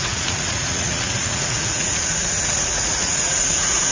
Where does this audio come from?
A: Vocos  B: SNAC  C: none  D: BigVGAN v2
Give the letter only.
A